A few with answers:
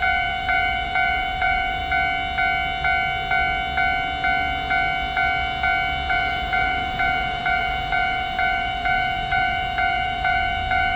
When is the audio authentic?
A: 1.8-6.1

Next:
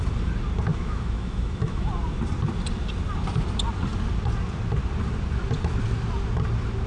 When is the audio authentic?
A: 0.0-0.7; 1.9-6.9